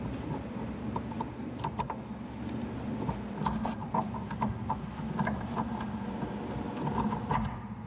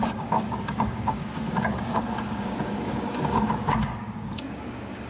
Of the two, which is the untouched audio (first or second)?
first